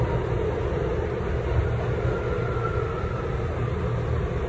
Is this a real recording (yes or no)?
yes